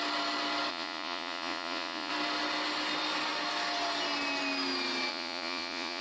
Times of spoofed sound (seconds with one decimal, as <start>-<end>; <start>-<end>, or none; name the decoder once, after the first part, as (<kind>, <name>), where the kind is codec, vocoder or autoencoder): 0.7-2.1 (vocoder, Vocos); 5.1-6.0